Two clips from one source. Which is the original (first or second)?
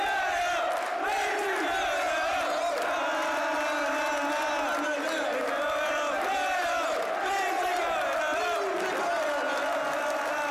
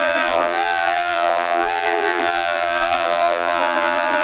first